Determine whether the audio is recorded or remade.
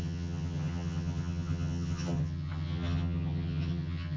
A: remade